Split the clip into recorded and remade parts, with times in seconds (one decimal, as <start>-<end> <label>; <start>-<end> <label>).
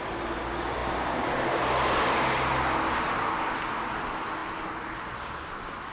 0.0-5.9 recorded